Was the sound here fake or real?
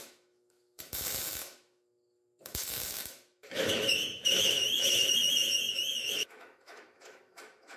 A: fake